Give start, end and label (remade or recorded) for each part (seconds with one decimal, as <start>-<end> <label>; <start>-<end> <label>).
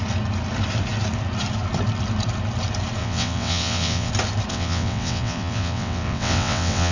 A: 0.0-3.0 recorded; 3.0-4.1 remade; 4.1-4.5 recorded; 4.5-6.9 remade